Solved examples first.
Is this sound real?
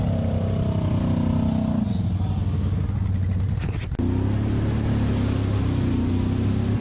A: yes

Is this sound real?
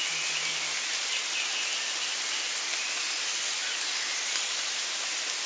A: yes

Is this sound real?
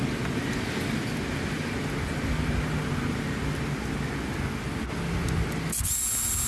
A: yes